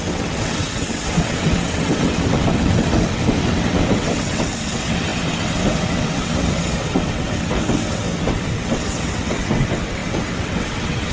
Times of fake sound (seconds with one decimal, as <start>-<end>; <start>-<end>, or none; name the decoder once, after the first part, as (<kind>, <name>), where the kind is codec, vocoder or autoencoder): 0.0-11.1 (vocoder, WaveNeXt)